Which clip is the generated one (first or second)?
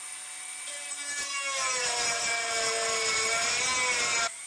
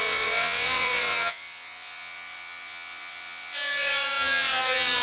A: second